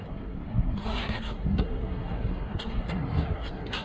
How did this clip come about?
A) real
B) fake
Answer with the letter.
B